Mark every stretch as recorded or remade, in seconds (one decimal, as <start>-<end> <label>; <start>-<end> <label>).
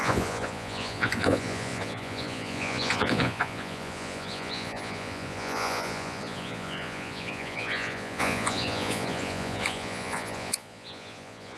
0.0-11.6 remade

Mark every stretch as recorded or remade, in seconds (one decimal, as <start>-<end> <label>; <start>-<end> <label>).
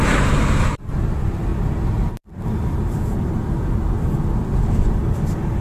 0.0-5.6 recorded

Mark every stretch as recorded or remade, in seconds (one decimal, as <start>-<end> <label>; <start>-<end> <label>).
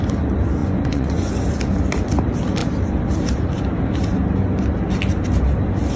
0.0-0.6 recorded; 0.6-1.3 remade; 1.3-6.0 recorded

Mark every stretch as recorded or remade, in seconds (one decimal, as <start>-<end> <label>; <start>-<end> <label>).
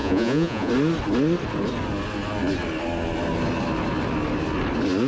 0.0-0.7 remade; 0.7-5.1 recorded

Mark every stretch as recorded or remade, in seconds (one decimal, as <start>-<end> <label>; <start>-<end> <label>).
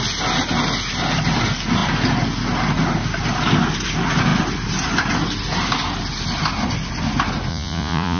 0.0-7.5 recorded; 7.5-8.2 remade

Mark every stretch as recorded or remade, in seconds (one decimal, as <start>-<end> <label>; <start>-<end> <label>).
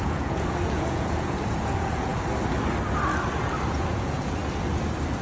0.0-2.1 remade; 2.1-3.7 recorded; 3.7-4.4 remade; 4.4-5.2 recorded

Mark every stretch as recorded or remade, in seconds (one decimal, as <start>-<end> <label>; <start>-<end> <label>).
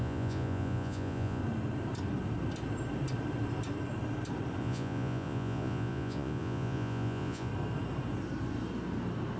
0.0-1.4 remade; 1.4-4.6 recorded; 4.6-7.5 remade; 7.5-9.4 recorded